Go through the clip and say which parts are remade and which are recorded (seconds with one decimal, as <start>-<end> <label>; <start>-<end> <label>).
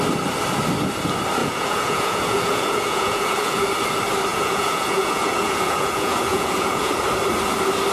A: 0.0-1.4 recorded; 1.4-3.6 remade; 3.6-4.3 recorded; 4.3-6.9 remade; 6.9-7.9 recorded